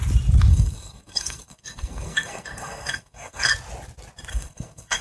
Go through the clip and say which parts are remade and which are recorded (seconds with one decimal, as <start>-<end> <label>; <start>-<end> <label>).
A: 0.0-0.5 recorded; 0.5-3.5 remade; 3.5-4.3 recorded; 4.3-5.0 remade